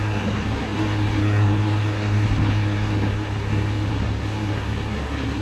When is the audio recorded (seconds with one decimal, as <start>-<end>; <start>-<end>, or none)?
none